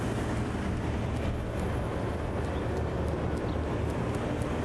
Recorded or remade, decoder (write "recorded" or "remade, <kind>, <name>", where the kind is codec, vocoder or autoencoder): recorded